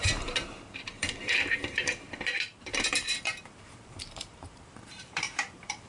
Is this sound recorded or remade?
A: remade